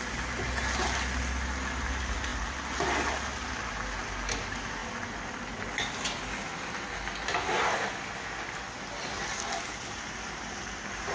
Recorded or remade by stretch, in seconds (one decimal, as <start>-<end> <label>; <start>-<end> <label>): 0.0-11.1 recorded